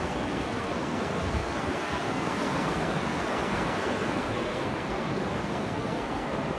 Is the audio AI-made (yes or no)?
yes